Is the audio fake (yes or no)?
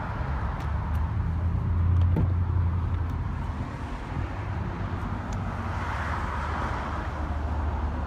no